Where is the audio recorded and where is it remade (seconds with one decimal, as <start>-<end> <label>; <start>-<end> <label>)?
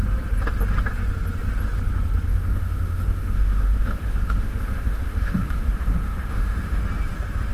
0.0-2.3 recorded; 2.3-6.8 remade; 6.8-7.5 recorded